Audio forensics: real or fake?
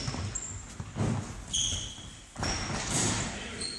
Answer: real